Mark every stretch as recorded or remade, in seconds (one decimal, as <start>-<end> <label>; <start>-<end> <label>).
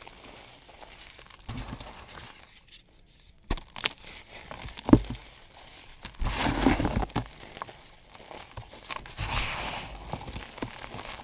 0.0-11.2 recorded